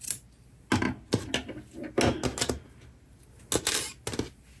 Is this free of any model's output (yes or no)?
yes